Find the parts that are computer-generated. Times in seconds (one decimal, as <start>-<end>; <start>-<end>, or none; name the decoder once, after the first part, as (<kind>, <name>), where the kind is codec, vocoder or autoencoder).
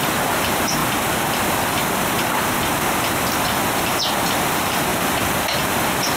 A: 0.0-0.8 (vocoder, BigVGAN v2); 3.8-4.9